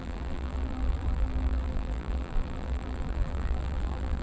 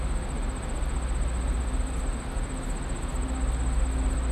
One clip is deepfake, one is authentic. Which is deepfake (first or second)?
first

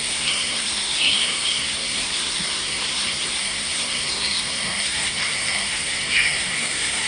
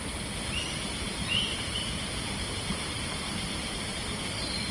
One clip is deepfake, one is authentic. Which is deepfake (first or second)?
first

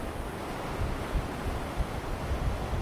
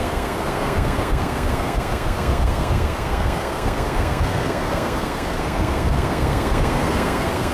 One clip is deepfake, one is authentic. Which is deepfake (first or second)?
second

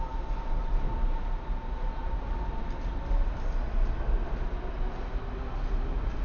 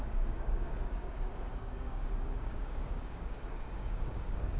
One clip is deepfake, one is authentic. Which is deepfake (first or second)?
second